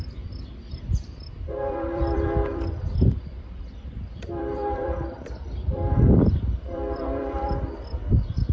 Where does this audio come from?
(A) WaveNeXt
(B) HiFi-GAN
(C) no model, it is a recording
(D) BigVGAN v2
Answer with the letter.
D